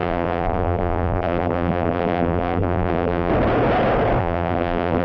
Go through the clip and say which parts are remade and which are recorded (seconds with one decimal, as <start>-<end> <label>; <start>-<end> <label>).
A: 0.0-3.3 remade; 3.3-4.2 recorded; 4.2-5.0 remade